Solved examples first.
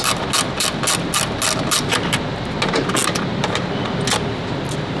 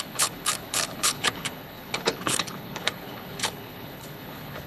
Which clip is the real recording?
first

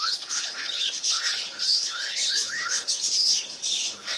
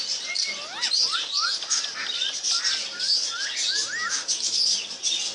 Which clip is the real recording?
second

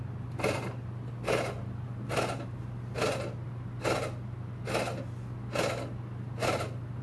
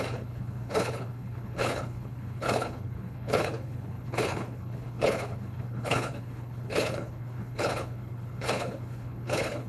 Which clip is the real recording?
first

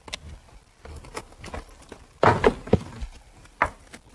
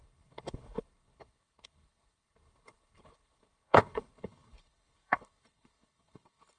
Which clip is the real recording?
first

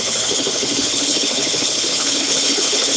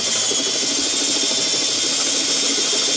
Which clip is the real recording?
second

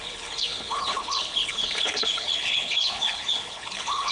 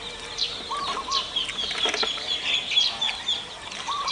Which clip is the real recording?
second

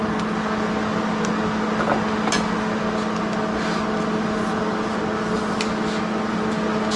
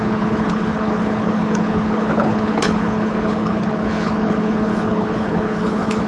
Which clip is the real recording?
first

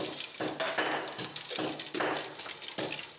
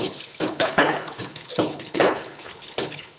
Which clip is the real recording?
first